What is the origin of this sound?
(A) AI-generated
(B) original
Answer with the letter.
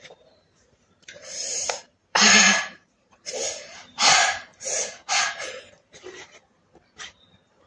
A